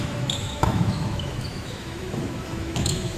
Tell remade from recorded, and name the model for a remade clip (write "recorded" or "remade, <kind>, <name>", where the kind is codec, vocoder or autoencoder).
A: remade, autoencoder, DAC-VAE